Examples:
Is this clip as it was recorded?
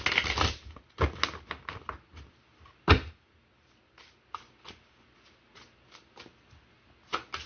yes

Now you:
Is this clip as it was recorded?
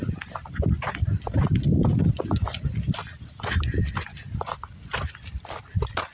no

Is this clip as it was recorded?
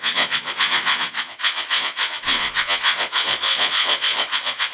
no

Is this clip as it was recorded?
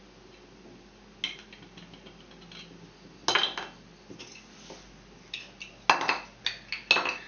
yes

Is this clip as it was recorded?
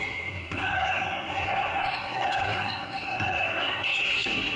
no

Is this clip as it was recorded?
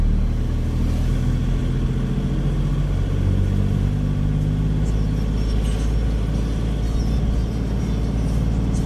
yes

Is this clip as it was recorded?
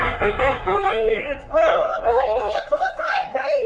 no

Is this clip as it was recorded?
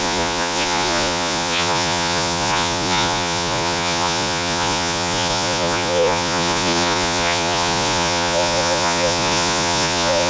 no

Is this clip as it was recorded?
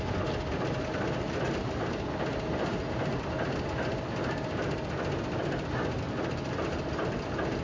yes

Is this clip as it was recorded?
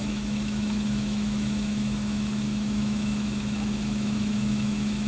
no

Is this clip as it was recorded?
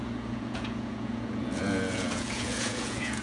no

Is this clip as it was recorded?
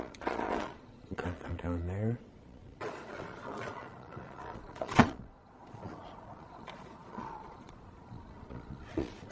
no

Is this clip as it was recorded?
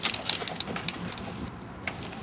yes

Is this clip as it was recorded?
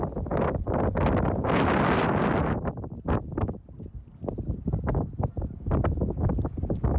yes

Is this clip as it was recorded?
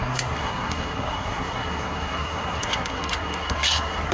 no